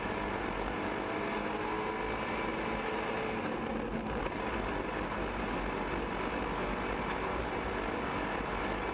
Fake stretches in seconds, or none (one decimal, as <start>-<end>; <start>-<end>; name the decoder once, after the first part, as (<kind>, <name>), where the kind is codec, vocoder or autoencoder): none